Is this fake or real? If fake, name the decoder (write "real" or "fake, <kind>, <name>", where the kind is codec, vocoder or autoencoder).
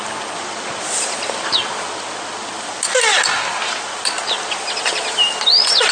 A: real